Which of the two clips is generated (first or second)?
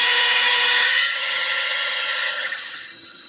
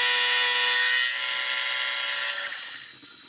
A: first